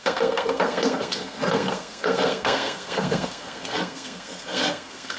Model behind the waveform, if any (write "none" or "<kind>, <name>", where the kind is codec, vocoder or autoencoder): codec, SNAC